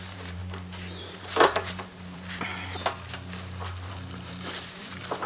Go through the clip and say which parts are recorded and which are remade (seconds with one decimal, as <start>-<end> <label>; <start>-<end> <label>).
0.0-0.4 remade; 0.4-1.0 recorded; 1.0-2.5 remade; 2.5-3.9 recorded; 3.9-5.3 remade